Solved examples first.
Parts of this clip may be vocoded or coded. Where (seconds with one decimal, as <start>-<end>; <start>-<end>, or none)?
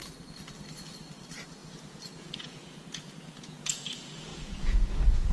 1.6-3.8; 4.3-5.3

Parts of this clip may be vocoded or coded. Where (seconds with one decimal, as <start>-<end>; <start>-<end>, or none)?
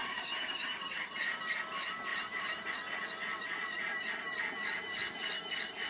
0.0-1.4; 2.1-2.7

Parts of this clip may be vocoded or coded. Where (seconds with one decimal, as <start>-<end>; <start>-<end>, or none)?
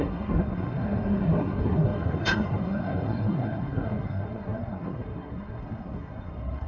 0.0-6.7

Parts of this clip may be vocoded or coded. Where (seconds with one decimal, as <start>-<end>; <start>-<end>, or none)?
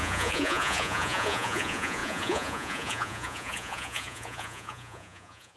0.0-5.6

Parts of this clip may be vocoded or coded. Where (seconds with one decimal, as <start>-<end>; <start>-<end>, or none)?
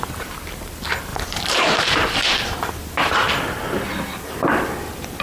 1.1-2.7